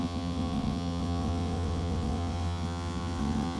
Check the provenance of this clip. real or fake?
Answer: fake